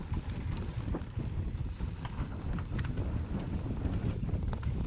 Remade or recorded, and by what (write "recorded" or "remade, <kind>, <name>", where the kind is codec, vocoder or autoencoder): recorded